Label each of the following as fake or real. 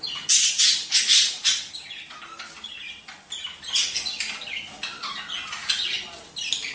real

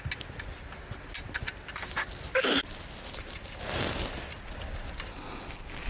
real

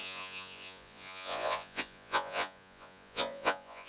fake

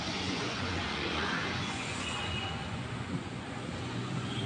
fake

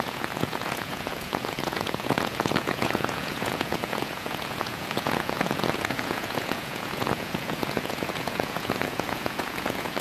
fake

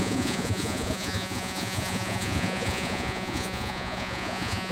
fake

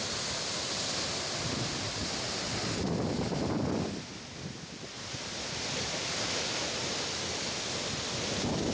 real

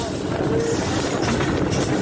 real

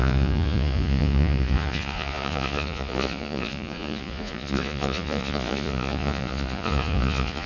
fake